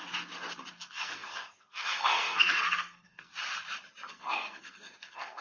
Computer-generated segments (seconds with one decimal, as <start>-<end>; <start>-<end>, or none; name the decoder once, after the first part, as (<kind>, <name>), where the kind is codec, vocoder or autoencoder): 0.7-3.3 (codec, SNAC); 4.1-5.4